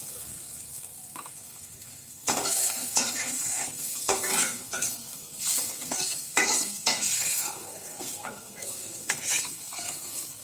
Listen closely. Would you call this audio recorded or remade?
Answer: remade